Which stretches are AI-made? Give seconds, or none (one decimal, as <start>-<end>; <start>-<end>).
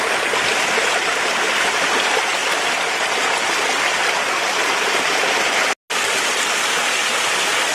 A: none